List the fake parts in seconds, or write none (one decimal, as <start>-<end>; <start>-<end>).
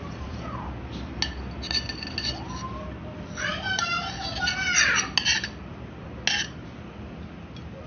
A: none